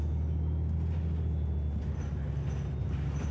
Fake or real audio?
real